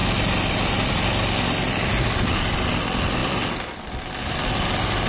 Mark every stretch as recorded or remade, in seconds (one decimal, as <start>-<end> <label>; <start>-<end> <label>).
0.0-2.7 remade; 2.7-3.2 recorded; 3.2-5.1 remade

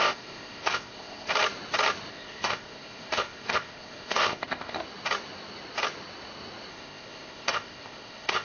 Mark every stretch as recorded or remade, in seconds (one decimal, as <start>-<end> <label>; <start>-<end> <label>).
0.0-1.3 remade; 1.3-2.1 recorded; 2.1-4.8 remade; 4.8-6.7 recorded; 6.7-8.4 remade

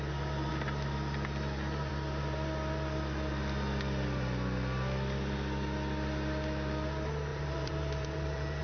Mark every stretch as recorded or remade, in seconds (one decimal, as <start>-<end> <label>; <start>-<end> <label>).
0.0-7.3 recorded; 7.3-8.6 remade

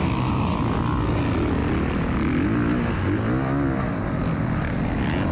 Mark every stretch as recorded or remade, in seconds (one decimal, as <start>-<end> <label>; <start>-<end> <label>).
0.0-5.3 recorded

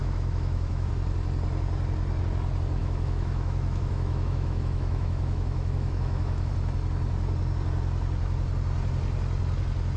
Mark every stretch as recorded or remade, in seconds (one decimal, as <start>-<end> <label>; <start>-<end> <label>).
0.0-0.9 remade; 0.9-2.8 recorded; 2.8-6.5 remade; 6.5-10.0 recorded